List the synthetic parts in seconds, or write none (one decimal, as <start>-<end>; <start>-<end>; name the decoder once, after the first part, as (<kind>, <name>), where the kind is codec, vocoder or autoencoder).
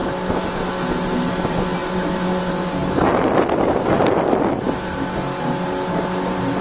none